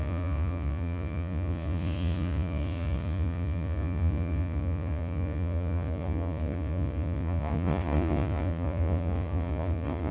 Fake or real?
fake